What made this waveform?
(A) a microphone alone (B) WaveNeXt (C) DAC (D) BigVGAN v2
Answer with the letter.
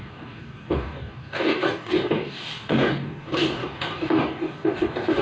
C